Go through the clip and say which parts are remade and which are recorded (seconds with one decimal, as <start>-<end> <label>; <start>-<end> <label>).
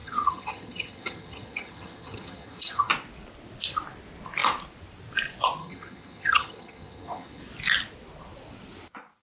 0.0-2.9 remade; 2.9-5.6 recorded; 5.6-7.4 remade; 7.4-9.2 recorded